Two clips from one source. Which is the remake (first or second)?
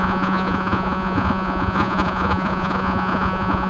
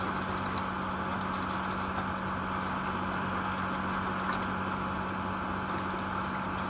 first